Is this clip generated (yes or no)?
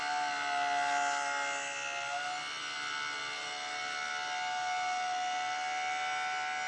no